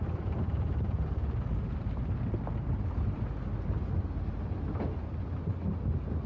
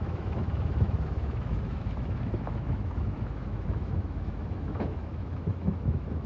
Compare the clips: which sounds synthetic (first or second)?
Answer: second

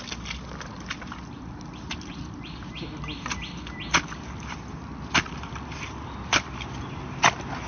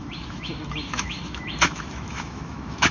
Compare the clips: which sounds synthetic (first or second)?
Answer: second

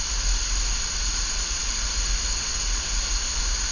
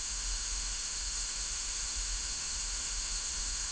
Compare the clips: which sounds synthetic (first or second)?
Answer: second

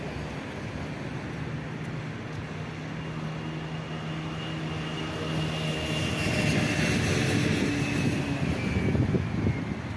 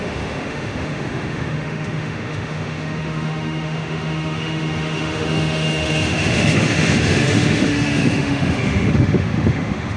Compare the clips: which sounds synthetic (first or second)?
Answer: second